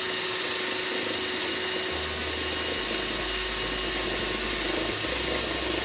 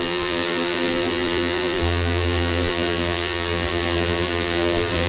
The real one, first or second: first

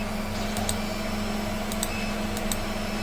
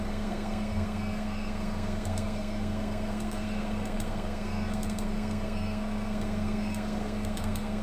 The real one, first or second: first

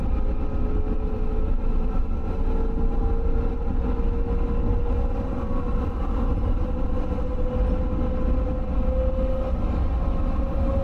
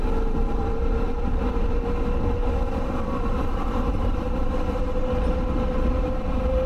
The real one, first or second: first